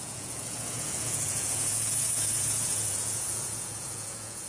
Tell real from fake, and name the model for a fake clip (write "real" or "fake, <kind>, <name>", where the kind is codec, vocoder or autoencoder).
fake, vocoder, Vocos